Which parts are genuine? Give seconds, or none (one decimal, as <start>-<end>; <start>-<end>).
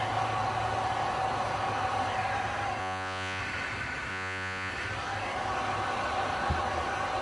0.0-2.8; 3.4-4.1; 4.7-7.2